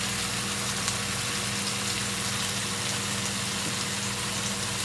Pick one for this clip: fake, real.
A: real